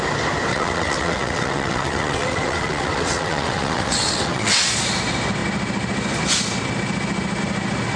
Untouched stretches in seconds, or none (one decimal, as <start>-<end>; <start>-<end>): 0.0-0.5; 4.7-8.0